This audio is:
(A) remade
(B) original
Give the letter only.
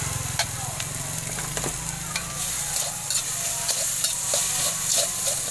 B